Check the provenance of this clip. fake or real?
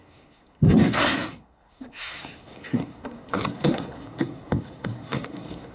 fake